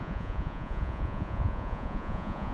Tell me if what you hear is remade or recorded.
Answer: remade